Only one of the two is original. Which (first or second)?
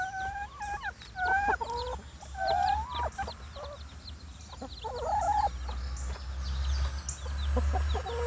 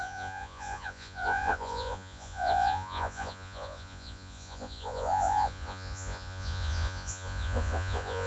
first